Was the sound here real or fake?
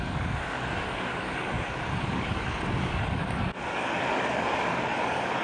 fake